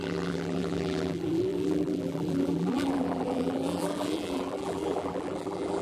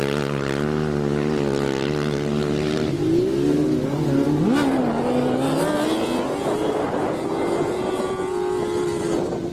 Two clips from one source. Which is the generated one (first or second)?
first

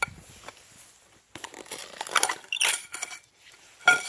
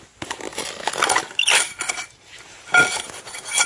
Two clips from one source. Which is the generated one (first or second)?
first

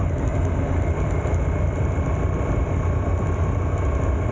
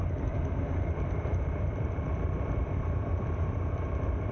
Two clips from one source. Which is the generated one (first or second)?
second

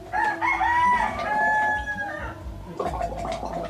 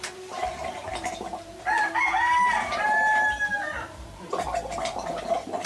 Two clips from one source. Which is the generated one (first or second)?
second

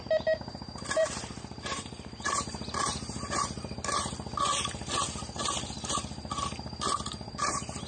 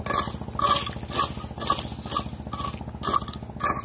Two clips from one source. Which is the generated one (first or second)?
first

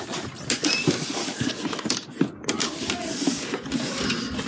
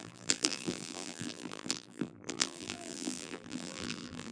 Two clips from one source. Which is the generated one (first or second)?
second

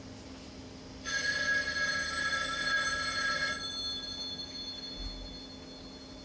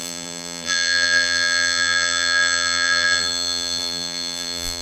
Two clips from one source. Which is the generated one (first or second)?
second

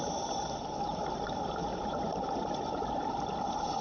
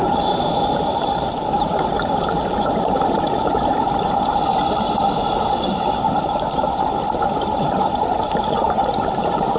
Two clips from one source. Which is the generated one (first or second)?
second